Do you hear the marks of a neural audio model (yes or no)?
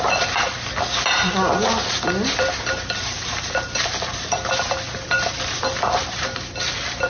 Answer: yes